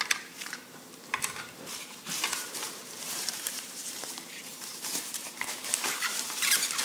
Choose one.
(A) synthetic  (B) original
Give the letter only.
A